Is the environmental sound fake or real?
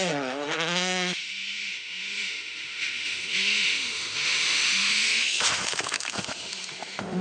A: fake